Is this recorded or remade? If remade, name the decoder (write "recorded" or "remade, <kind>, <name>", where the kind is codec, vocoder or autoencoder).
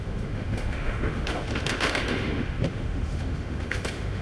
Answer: remade, autoencoder, DAC-VAE